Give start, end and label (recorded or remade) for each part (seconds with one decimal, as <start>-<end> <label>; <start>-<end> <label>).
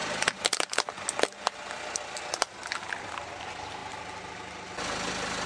0.0-5.5 recorded